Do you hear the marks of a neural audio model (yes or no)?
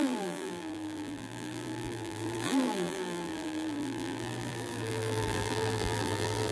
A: yes